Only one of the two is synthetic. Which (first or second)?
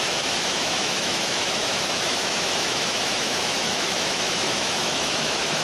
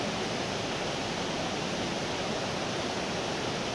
first